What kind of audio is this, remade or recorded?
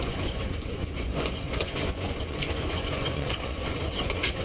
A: remade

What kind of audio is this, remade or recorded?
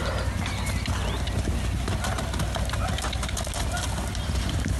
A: recorded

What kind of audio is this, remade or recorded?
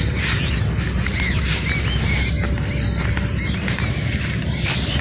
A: recorded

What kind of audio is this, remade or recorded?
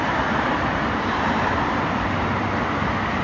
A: recorded